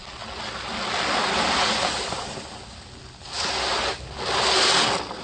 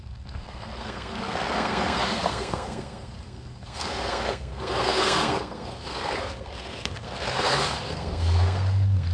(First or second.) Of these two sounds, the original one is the first